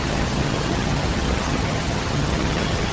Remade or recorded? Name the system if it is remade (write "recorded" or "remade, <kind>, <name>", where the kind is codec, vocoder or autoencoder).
remade, vocoder, HiFi-GAN